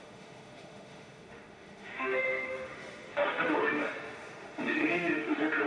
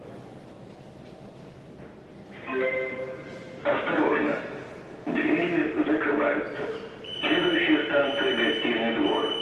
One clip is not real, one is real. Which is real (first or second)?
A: second